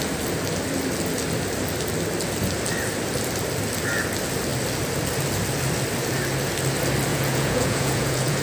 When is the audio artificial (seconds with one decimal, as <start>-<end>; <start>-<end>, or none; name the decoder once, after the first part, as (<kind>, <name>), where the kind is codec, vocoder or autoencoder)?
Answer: 7.1-8.4 (vocoder, Vocos)